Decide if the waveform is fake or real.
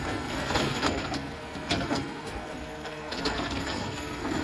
fake